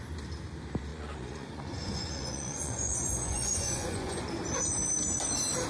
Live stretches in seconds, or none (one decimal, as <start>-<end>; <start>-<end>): 0.0-0.9; 4.3-5.7